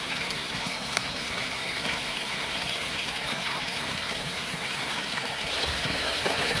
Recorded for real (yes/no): no